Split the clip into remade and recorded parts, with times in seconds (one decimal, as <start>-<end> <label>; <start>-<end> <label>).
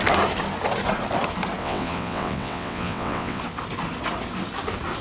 0.0-1.6 recorded; 1.6-3.4 remade; 3.4-5.0 recorded